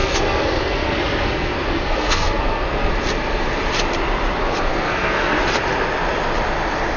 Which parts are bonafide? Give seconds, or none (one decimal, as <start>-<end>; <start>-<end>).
2.9-4.7; 5.4-7.0